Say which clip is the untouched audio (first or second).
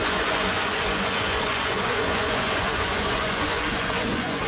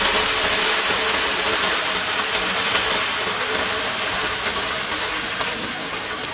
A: second